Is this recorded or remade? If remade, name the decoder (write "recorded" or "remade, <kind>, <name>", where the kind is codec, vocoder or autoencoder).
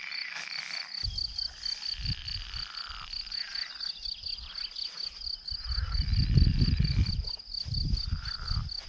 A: recorded